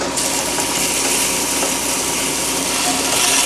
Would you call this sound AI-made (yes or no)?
no